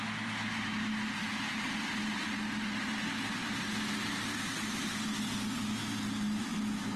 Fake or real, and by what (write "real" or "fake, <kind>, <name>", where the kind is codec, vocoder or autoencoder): real